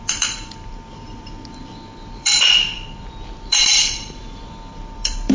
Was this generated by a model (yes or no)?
yes